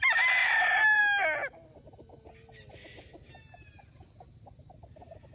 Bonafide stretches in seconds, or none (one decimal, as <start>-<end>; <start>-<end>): 0.0-0.4; 1.0-5.3